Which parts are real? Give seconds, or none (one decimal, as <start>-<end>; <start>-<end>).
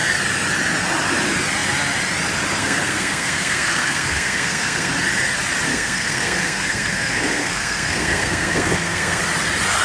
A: 0.0-2.6; 4.9-5.7; 9.2-9.8